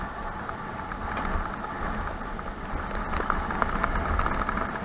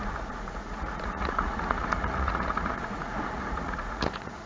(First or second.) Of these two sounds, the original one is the first